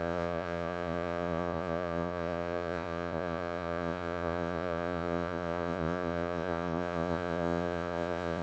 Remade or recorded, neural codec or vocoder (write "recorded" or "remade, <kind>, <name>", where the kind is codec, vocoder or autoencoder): remade, vocoder, Vocos